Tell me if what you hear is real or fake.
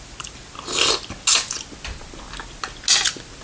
real